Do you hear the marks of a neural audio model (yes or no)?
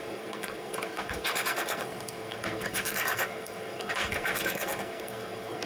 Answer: yes